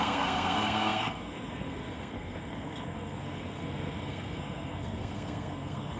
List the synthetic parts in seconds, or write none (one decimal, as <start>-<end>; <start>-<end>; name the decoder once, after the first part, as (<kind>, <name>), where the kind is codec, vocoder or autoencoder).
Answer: 0.0-6.0 (codec, SNAC)